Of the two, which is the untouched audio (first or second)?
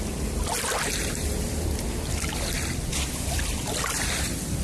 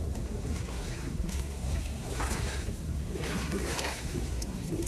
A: first